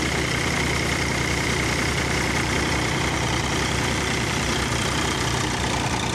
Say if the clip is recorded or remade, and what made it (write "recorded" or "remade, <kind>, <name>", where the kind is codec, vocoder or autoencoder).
remade, vocoder, BigVGAN v2